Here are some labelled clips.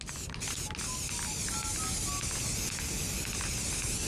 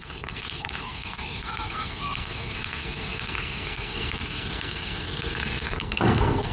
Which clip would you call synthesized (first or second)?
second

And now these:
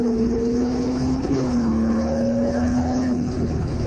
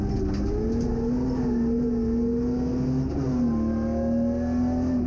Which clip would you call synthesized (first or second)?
first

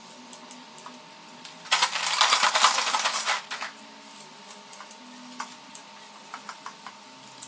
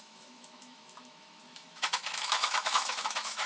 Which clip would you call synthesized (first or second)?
second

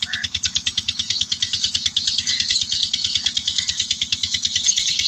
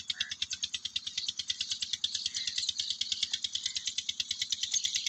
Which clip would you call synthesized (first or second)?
first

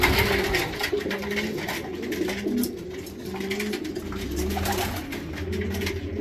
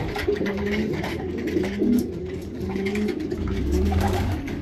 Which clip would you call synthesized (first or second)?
second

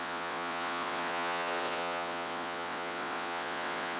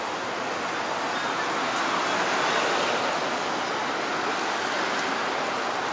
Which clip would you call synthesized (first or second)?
first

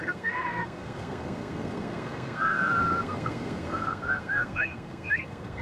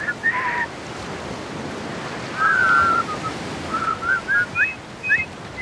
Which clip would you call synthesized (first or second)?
first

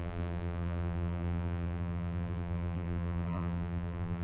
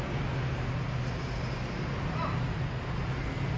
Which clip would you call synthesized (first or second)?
first